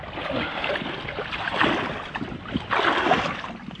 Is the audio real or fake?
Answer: real